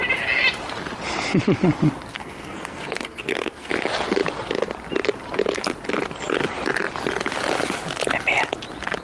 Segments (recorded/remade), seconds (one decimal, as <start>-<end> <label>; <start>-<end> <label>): 0.0-2.1 recorded; 2.1-3.7 remade; 3.7-9.0 recorded

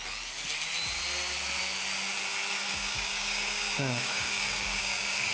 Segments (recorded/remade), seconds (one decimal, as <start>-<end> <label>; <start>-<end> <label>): 0.0-2.5 recorded; 2.5-5.3 remade

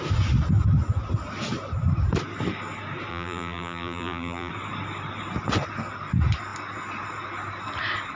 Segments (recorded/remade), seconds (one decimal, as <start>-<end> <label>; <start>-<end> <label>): 0.0-3.1 recorded; 3.1-4.5 remade; 4.5-8.2 recorded